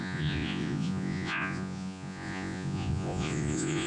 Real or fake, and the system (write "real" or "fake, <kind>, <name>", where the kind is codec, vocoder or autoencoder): fake, vocoder, Vocos